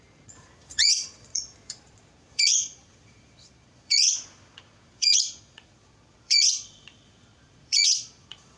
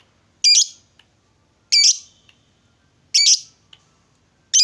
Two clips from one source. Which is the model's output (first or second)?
first